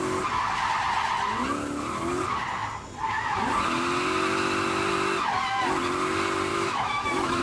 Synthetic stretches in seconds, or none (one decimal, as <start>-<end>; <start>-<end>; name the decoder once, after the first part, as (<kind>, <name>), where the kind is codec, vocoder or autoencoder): 6.5-7.4 (autoencoder, DAC-VAE)